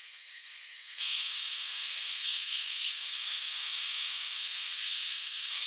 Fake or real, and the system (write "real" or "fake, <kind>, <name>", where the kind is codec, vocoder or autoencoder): fake, codec, SNAC